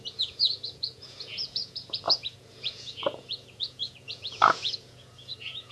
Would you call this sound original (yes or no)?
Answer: no